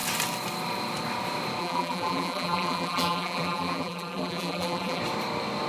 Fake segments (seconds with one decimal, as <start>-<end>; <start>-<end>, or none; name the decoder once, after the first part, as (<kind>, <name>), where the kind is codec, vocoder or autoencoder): 1.6-5.0 (vocoder, BigVGAN v2)